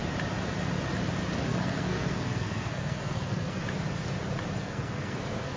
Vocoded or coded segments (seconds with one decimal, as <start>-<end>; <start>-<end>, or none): 1.5-3.6; 4.6-5.6